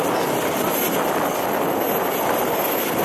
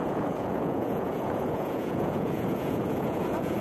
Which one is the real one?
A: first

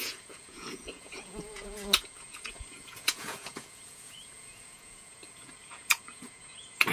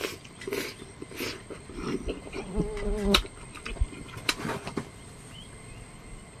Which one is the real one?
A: second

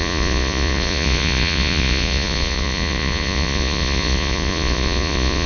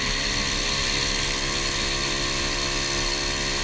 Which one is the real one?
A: second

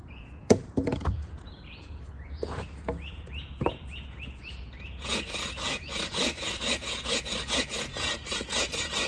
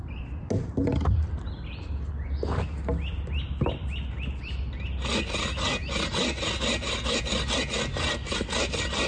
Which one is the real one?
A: second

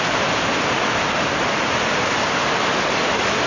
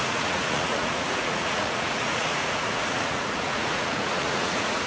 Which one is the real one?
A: first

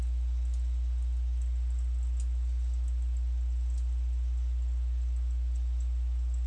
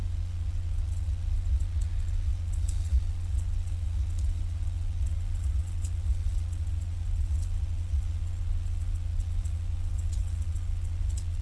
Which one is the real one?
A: first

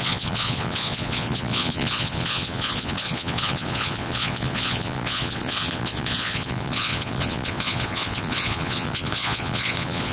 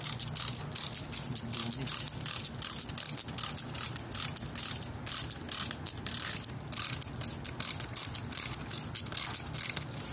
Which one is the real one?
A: second